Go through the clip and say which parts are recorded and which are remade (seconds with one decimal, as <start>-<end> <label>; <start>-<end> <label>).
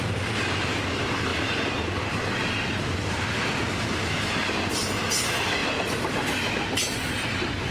0.0-7.7 recorded